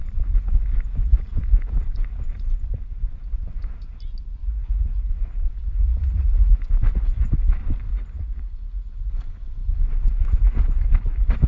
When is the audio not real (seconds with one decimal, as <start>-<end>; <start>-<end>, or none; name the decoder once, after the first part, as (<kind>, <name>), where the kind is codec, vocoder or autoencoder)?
4.4-5.1 (vocoder, Vocos); 5.8-6.5; 7.9-9.1